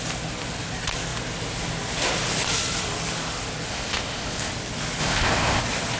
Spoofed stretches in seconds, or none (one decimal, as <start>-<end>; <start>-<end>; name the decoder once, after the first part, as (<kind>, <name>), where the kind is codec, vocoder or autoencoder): 3.7-4.5 (codec, ZipCodec); 5.0-5.6